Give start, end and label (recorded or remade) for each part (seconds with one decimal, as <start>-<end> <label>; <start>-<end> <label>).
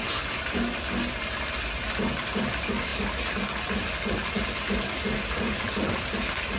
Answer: 0.0-6.6 recorded